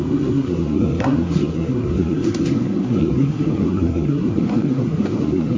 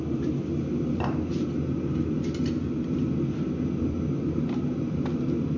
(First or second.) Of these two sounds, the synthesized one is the first